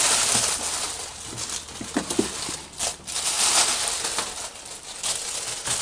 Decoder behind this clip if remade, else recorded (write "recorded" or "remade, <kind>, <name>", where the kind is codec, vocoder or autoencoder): recorded